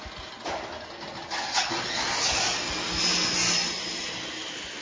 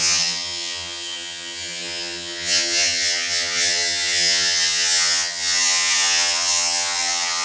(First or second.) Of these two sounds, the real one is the first